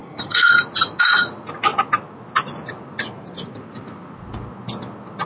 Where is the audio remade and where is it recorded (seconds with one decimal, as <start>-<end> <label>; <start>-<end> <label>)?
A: 0.0-0.5 remade; 0.5-5.3 recorded